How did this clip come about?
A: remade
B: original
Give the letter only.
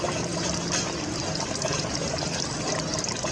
B